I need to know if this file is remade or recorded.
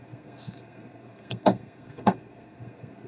remade